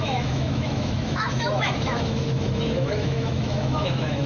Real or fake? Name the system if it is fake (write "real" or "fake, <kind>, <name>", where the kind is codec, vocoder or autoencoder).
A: fake, autoencoder, DAC-VAE